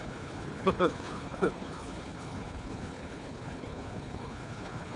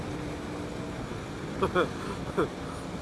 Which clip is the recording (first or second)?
second